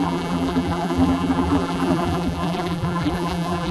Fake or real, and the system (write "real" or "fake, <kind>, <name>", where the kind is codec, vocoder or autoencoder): fake, vocoder, BigVGAN v2